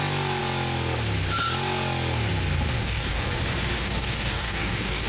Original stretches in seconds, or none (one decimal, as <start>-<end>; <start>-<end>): 0.0-2.8; 3.3-3.8